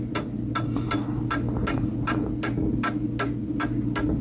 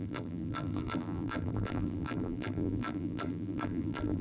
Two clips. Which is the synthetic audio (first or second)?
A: second